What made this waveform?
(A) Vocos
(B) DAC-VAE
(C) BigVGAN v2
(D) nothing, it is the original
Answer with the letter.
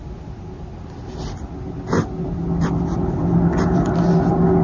D